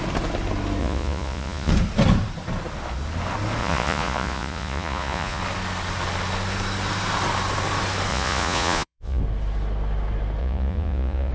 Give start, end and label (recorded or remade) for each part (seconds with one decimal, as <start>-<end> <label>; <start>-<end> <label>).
0.0-0.8 recorded; 0.8-1.7 remade; 1.7-3.6 recorded; 3.6-5.4 remade; 5.4-8.1 recorded; 8.1-9.2 remade; 9.2-10.4 recorded; 10.4-11.3 remade